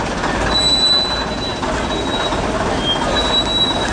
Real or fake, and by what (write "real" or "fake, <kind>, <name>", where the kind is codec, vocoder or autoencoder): real